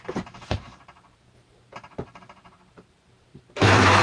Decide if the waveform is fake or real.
fake